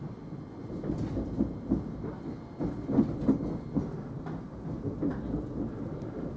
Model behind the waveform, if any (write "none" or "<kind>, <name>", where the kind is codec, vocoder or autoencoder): none